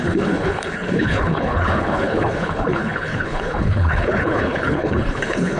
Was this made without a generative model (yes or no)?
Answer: no